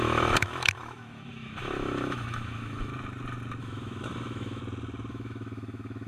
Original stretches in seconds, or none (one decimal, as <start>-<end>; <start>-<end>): 2.9-3.6; 4.6-5.1